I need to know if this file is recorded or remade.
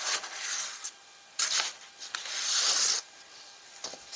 recorded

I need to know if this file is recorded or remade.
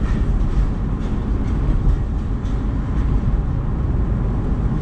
recorded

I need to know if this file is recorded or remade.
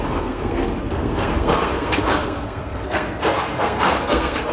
remade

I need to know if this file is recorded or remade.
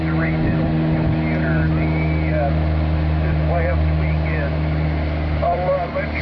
recorded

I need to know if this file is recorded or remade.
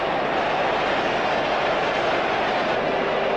recorded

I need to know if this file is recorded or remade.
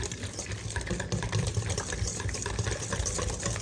recorded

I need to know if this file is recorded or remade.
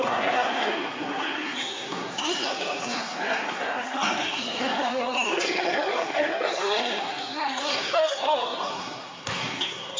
remade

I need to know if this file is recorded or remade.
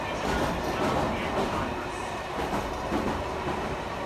recorded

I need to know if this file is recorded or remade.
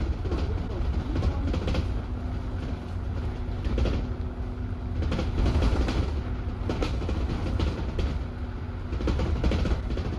recorded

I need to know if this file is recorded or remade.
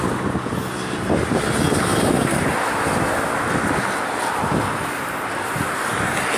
recorded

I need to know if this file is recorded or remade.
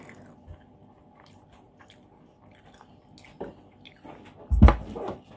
recorded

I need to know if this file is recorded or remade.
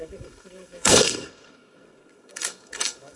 remade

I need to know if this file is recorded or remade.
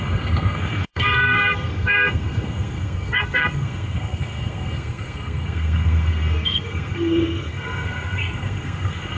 remade